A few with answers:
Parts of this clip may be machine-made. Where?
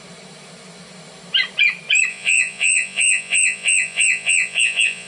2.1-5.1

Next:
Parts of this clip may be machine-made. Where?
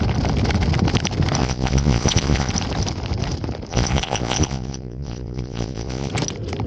1.4-2.5; 3.7-6.1